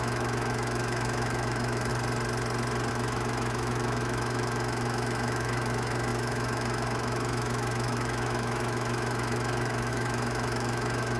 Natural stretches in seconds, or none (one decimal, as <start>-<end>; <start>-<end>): 1.9-2.9